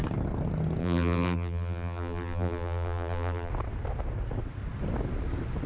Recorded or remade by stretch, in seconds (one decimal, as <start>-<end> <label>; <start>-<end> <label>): 0.0-0.8 recorded; 0.8-3.5 remade; 3.5-5.7 recorded